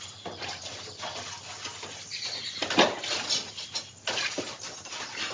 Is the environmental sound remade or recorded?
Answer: recorded